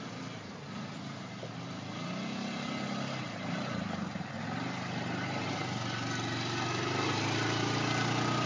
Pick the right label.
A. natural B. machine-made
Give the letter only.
A